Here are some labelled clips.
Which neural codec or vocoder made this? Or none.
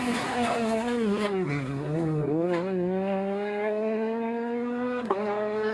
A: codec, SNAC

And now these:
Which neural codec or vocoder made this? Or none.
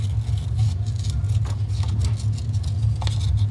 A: none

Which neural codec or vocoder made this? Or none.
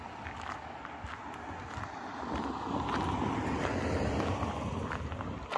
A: none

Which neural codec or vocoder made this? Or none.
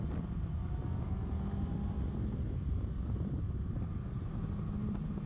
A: none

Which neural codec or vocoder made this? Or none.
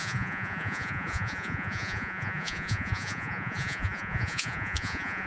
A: vocoder, Vocos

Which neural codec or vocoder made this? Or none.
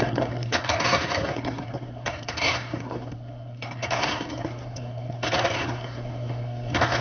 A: codec, SNAC